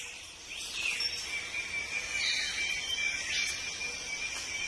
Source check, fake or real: real